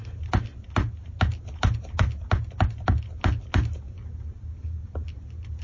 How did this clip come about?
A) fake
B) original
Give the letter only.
B